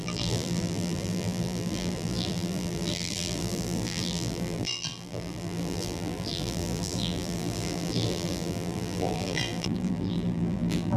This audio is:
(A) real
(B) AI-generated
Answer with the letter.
B